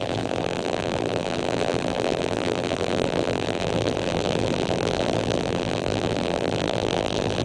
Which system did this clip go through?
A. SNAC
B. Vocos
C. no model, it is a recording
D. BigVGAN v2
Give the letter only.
D